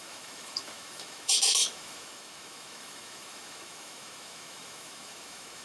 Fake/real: fake